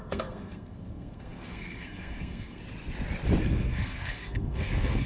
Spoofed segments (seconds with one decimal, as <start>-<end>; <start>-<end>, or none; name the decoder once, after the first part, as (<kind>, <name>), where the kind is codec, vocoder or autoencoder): 0.0-2.6 (codec, SNAC); 3.4-5.1